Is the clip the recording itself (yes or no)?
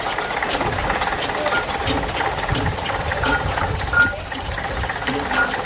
yes